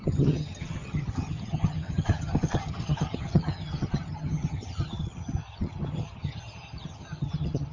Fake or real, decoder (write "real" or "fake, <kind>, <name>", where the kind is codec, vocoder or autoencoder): fake, vocoder, HiFi-GAN